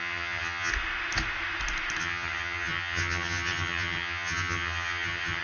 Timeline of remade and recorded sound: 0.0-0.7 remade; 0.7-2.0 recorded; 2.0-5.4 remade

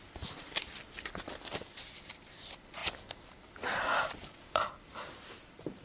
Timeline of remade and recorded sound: 0.0-5.8 recorded